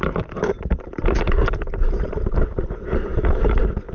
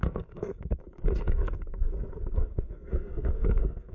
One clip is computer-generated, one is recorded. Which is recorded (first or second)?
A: first